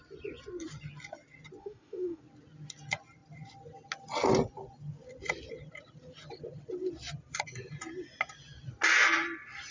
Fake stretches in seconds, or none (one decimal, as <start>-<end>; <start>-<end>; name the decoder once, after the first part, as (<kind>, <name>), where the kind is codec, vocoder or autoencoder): 1.6-2.2 (autoencoder, DAC-VAE)